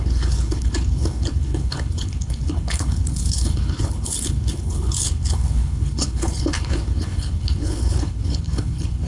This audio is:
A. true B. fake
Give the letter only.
B